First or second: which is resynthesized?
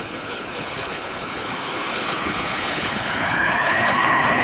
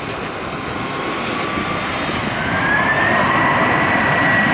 first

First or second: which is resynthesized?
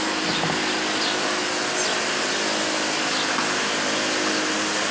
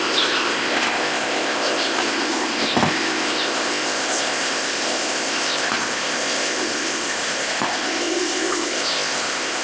second